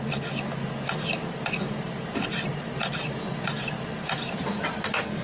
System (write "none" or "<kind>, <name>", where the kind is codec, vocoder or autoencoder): none